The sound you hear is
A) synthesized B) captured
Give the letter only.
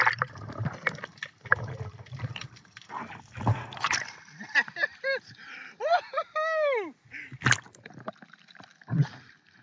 B